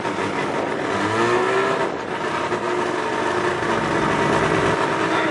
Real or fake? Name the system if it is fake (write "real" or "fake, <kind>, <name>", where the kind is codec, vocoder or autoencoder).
real